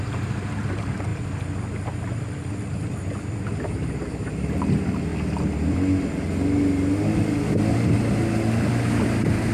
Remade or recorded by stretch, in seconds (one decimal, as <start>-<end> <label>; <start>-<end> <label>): 0.0-1.1 remade; 1.1-3.4 recorded; 3.4-5.1 remade; 5.1-9.0 recorded; 9.0-9.5 remade

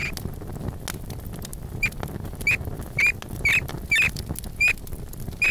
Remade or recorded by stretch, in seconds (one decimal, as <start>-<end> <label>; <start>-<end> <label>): 0.0-5.5 recorded